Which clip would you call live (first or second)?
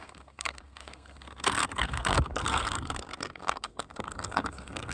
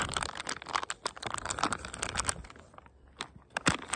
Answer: second